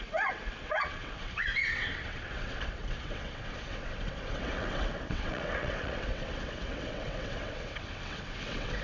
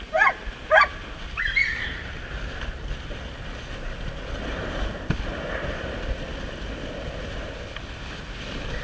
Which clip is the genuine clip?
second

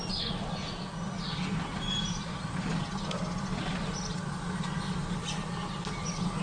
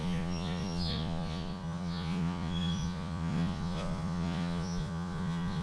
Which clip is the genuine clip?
first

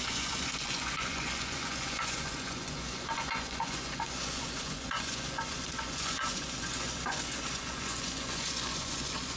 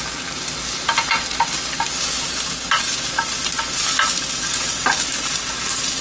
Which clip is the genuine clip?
second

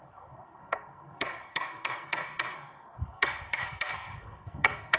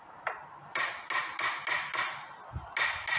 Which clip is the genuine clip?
second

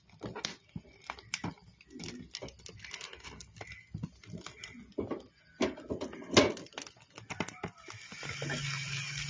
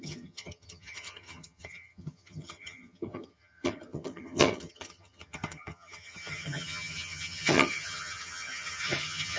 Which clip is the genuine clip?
first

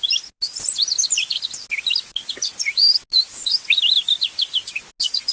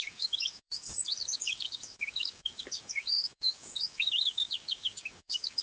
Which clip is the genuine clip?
first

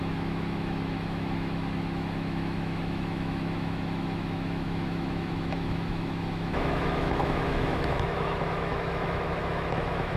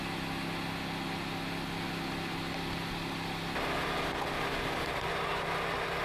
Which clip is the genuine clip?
second